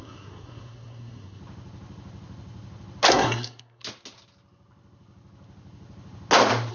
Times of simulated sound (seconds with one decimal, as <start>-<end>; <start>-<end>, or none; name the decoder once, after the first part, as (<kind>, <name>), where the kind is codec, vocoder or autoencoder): 0.0-1.4 (codec, SNAC); 3.1-3.8